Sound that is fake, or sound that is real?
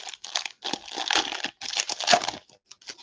real